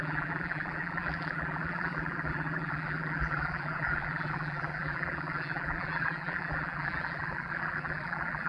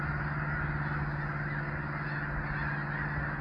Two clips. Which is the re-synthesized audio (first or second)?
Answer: first